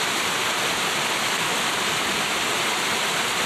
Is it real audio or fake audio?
real